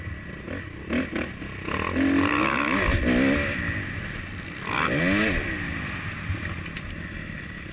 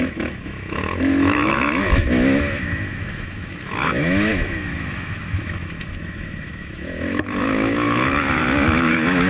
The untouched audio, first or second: first